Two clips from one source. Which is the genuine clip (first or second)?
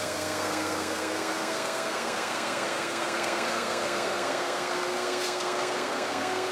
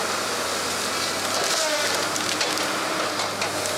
second